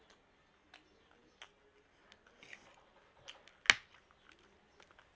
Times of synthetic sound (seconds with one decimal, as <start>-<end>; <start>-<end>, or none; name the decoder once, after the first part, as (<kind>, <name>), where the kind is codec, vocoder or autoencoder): none